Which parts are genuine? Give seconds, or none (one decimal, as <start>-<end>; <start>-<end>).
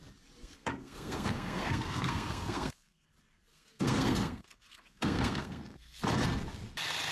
0.0-0.4; 3.1-3.5; 6.0-7.1